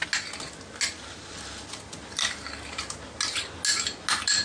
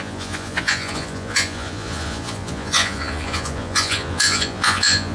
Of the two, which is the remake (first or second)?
second